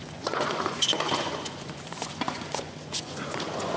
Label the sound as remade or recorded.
remade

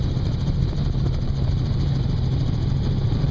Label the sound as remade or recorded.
remade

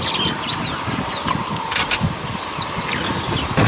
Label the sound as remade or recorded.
recorded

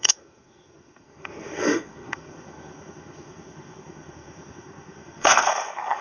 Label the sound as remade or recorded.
remade